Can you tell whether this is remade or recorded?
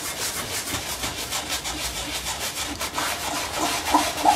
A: recorded